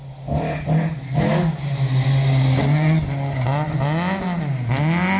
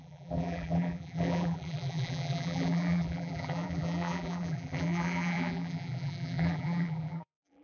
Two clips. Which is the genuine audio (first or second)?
first